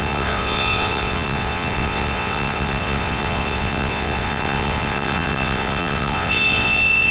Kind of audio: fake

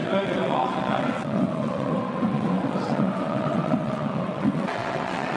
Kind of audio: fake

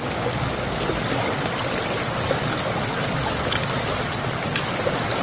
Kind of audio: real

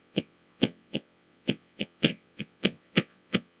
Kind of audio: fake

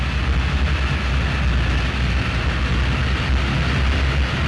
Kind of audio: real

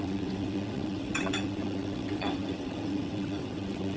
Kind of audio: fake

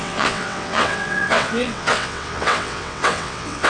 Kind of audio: fake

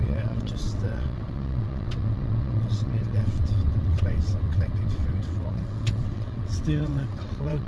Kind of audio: fake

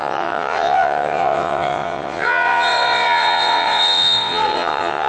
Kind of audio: fake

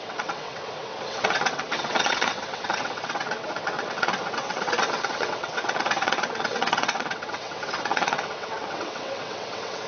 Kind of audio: fake